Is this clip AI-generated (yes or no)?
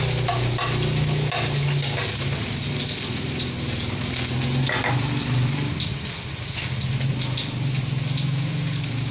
no